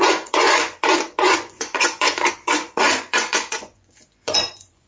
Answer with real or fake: fake